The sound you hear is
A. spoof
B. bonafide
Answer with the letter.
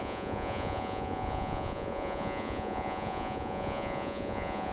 A